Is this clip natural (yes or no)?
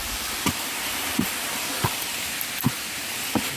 no